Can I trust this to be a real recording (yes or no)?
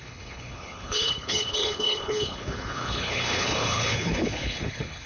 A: no